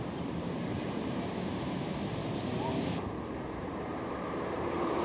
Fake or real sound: fake